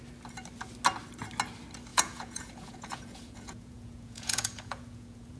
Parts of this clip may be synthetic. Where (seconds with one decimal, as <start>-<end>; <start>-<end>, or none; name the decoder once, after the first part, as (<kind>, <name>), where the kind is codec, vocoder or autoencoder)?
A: 1.9-5.4 (vocoder, Vocos)

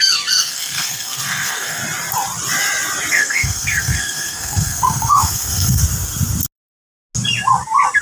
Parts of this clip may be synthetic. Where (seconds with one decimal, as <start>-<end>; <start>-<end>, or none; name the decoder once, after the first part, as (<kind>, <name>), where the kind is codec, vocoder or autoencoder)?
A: 0.0-1.8 (codec, SNAC); 3.1-5.8

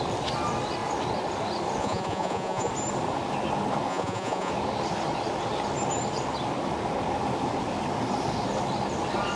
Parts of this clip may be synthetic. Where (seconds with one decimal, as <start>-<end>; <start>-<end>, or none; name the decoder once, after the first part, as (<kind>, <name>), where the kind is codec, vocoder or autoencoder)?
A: 1.8-2.7 (vocoder, Vocos); 3.9-4.5